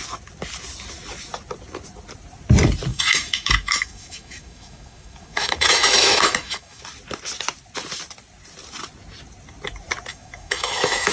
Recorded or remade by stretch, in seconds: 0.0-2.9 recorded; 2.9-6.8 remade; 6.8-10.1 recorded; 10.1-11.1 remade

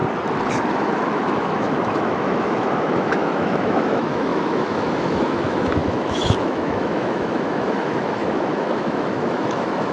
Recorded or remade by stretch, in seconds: 0.0-0.7 recorded; 0.7-9.9 remade